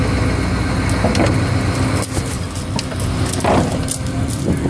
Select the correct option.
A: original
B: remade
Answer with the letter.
A